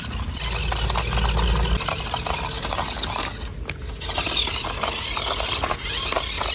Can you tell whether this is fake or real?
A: real